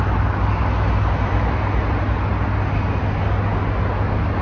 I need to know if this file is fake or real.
real